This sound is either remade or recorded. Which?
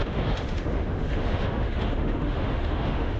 remade